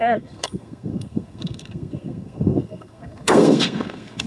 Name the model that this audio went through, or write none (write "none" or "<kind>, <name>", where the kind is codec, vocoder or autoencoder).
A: codec, SNAC